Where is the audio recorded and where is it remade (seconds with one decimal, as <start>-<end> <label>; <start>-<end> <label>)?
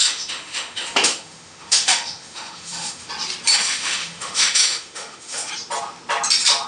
0.0-3.1 remade; 3.1-3.5 recorded; 3.5-5.5 remade; 5.5-6.7 recorded